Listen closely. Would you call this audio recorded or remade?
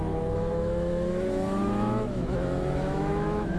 remade